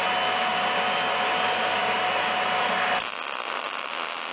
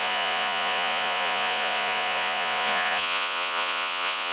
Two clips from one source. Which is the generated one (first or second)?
second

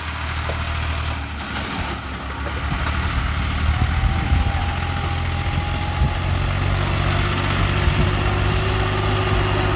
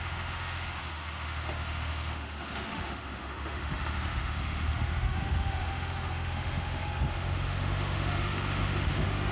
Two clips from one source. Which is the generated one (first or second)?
second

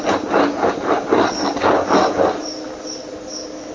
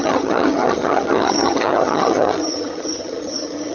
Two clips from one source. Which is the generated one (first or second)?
second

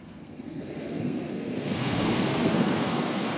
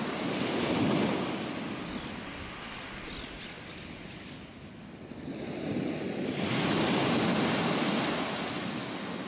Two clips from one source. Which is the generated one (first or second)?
first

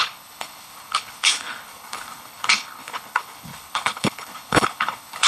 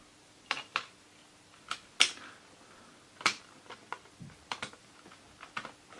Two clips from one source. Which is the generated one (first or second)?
first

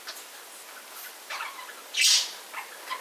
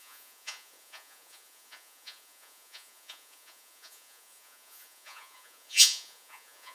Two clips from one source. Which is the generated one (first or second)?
second